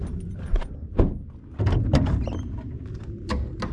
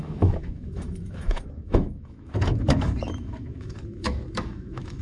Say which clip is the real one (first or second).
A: first